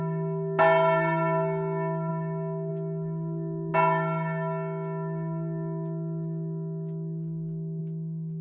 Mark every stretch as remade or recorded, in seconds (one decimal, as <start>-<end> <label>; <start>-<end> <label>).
0.0-8.4 recorded